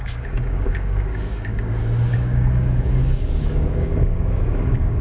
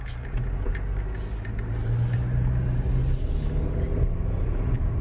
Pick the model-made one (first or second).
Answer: first